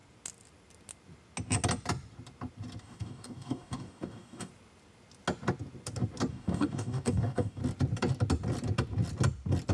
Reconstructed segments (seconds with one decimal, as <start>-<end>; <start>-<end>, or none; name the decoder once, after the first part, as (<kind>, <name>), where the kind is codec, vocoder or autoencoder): 2.8-4.5 (codec, DAC); 6.3-7.6